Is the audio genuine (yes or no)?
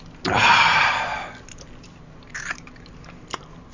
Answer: yes